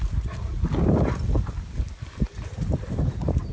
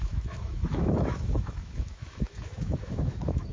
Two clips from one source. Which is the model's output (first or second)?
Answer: second